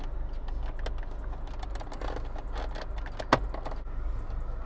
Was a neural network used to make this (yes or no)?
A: no